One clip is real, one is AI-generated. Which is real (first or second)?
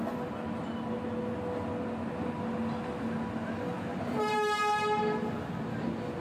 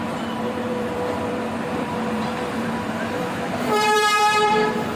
first